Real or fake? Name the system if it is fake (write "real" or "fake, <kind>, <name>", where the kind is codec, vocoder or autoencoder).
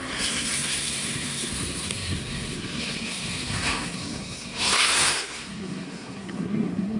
fake, codec, SNAC